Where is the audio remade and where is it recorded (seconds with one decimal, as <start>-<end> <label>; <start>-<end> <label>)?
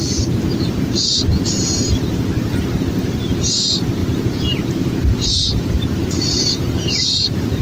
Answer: 0.0-7.6 remade